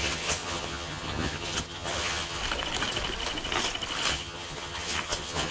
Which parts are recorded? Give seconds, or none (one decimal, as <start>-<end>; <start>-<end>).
2.4-4.1